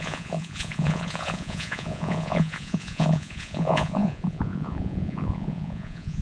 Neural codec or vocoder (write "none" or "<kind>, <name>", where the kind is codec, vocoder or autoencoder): vocoder, Vocos